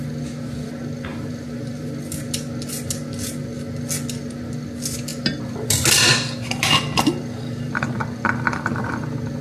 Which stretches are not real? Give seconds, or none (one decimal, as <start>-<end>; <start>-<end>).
1.1-1.9